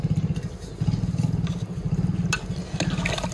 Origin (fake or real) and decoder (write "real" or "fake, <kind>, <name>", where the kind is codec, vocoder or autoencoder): real